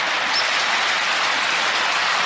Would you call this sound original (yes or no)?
yes